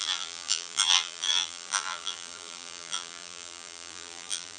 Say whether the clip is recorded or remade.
remade